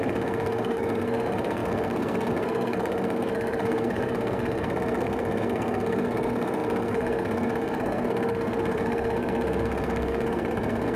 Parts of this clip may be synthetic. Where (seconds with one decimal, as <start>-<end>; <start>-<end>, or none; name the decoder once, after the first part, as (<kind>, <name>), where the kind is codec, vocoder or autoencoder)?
0.0-11.0 (codec, SNAC)